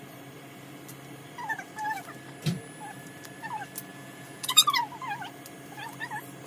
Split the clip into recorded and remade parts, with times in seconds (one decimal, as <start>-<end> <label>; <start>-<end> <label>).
0.0-3.9 recorded; 3.9-4.6 remade; 4.6-6.5 recorded